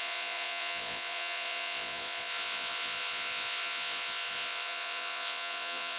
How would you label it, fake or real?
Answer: fake